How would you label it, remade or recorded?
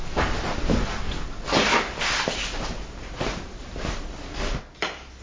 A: recorded